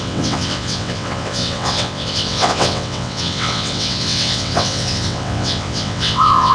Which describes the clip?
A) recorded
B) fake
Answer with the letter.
B